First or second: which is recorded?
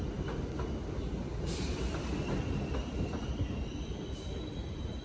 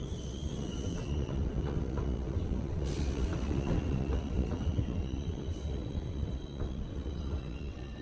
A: first